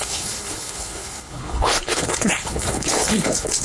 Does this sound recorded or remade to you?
remade